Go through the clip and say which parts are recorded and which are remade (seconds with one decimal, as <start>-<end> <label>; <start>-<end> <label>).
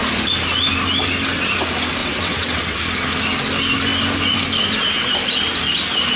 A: 0.0-2.0 recorded; 2.0-2.8 remade; 2.8-6.2 recorded